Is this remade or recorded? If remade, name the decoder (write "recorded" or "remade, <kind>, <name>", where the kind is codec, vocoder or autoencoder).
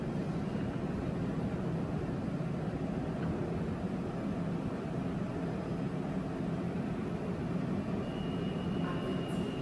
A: recorded